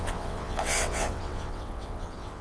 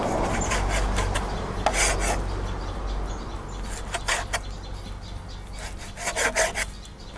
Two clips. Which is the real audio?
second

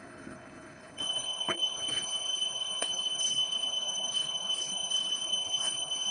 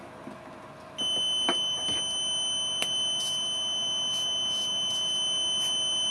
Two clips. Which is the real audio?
second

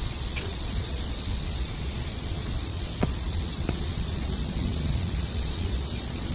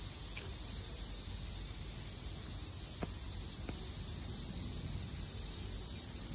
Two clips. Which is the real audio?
second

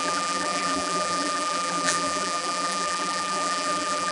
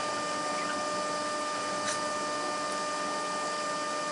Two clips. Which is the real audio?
second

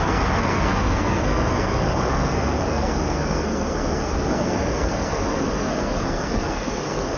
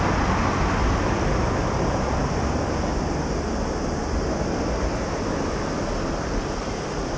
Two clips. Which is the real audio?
second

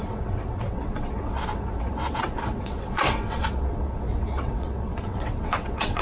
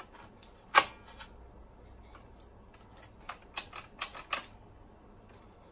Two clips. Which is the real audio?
second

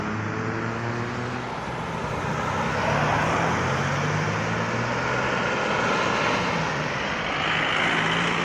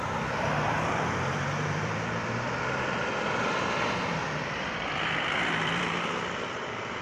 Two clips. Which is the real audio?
first